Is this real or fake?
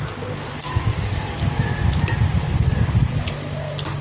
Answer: real